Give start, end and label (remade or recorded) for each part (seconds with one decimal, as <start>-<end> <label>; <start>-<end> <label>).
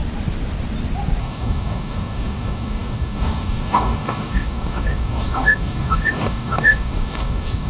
0.0-1.2 recorded; 1.2-7.7 remade